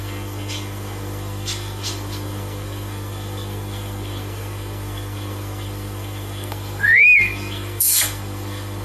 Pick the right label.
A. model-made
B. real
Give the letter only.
A